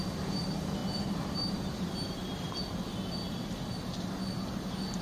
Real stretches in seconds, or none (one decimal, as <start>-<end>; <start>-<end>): 0.0-5.0